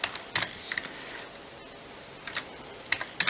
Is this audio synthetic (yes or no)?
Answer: no